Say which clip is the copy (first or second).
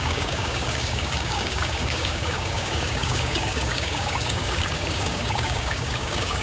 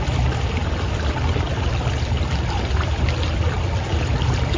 first